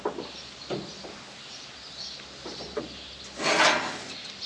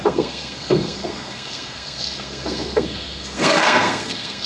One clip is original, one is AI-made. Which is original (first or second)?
first